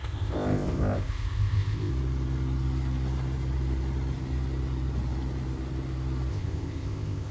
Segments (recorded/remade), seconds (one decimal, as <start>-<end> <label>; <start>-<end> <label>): 0.0-1.9 remade; 1.9-6.3 recorded; 6.3-7.3 remade